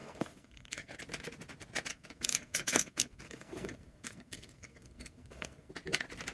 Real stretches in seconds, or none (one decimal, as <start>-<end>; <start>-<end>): 1.0-1.9; 5.7-6.3